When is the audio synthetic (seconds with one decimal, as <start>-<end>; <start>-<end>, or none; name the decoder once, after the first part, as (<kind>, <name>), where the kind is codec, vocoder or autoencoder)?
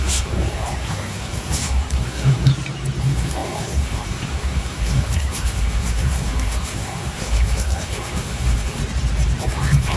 0.0-2.5 (codec, SNAC); 3.0-8.8; 9.4-10.0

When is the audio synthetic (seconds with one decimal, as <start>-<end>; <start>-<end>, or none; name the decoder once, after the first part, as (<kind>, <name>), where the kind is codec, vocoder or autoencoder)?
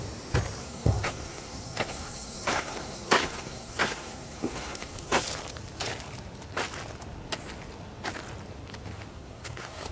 0.6-5.2 (codec, SNAC); 9.1-9.9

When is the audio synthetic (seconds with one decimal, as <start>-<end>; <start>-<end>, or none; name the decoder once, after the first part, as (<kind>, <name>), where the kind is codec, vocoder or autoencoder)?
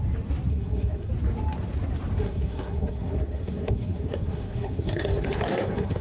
0.5-1.1 (codec, SNAC); 2.2-6.0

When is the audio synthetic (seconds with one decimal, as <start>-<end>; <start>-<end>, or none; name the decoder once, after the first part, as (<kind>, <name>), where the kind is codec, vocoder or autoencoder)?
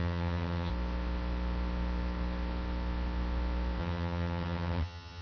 0.0-0.7 (vocoder, HiFi-GAN); 3.8-5.2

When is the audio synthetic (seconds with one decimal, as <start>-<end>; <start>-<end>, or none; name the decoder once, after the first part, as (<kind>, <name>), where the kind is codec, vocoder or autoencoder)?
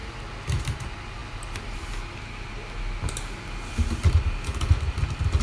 none